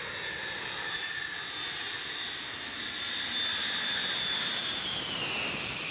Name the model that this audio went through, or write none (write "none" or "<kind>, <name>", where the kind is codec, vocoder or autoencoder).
none